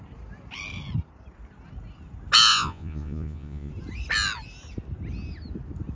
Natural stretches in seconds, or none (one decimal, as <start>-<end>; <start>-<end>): 0.0-2.5; 3.7-6.0